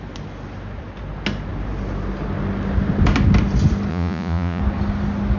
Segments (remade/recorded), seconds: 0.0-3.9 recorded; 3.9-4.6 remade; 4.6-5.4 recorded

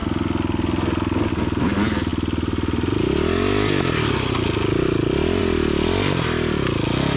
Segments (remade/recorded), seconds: 0.0-7.2 recorded

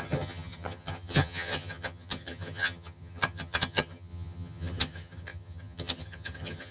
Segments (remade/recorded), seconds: 0.0-6.7 remade

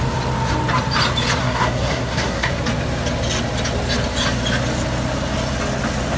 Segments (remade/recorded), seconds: 0.0-1.4 recorded; 1.4-2.5 remade; 2.5-6.2 recorded

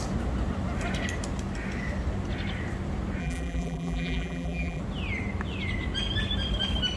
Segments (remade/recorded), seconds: 0.0-3.2 recorded; 3.2-4.8 remade; 4.8-7.0 recorded

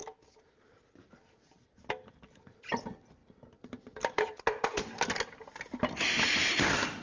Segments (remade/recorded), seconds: 0.0-7.0 recorded

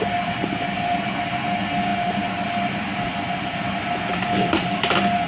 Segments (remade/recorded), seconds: 0.0-5.3 recorded